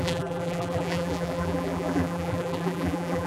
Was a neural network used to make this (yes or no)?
yes